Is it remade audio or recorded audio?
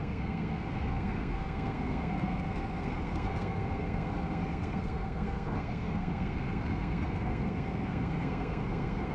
remade